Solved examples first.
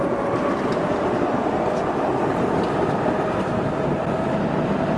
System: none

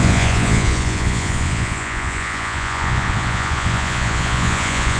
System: vocoder, Vocos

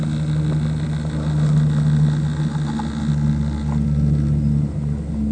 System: none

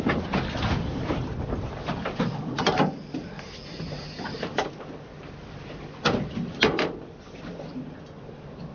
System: none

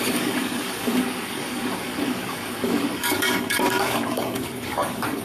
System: codec, DAC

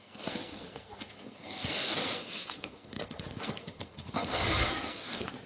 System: codec, SNAC